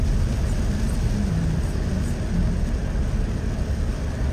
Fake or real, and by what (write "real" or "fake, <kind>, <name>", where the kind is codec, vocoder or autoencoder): real